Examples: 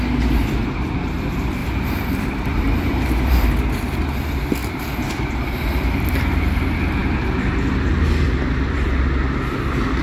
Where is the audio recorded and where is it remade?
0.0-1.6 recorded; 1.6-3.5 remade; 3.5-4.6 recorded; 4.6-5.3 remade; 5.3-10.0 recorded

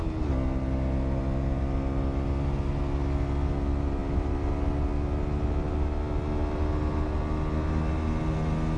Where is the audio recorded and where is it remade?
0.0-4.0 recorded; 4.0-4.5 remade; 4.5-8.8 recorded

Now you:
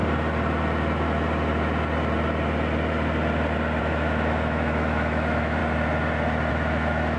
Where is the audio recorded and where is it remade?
0.0-3.8 recorded; 3.8-5.6 remade; 5.6-6.5 recorded; 6.5-7.2 remade